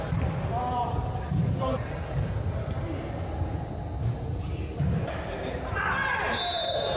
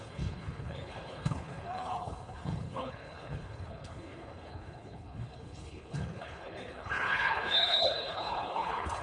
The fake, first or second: second